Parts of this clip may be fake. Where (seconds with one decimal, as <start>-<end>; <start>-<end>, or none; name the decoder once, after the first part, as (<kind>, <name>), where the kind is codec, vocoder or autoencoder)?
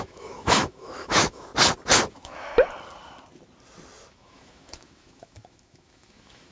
0.0-1.5 (autoencoder, DAC-VAE); 2.1-2.5; 4.1-6.5